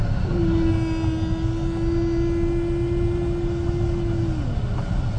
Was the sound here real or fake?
real